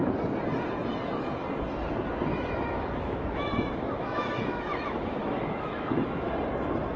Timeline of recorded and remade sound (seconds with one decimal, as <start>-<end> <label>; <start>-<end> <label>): 0.0-2.3 recorded; 2.3-6.3 remade; 6.3-7.0 recorded